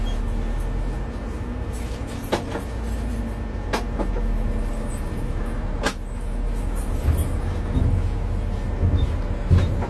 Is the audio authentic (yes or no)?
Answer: yes